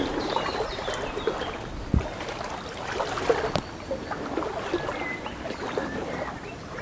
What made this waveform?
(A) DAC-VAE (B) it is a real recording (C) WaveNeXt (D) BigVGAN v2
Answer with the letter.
B